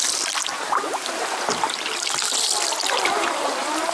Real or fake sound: real